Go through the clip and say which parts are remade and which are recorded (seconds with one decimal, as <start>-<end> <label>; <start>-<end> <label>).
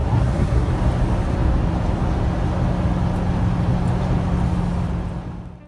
0.0-0.7 remade; 0.7-5.7 recorded